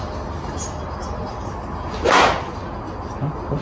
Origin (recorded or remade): recorded